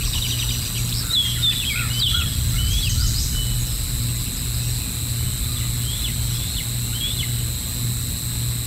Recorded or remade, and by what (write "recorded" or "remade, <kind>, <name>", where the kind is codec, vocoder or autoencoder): recorded